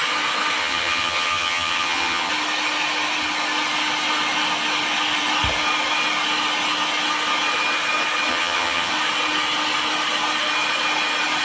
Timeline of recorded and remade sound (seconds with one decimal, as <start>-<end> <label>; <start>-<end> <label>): 0.0-0.6 recorded; 0.6-2.3 remade; 2.3-8.3 recorded; 8.3-8.9 remade; 8.9-11.4 recorded